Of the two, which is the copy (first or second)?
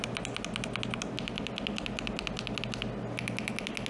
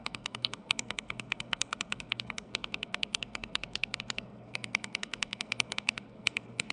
second